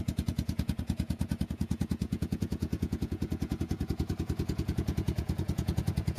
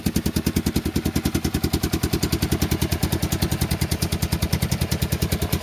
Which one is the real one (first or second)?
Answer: second